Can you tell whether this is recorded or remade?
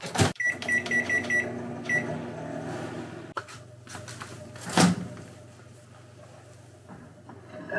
recorded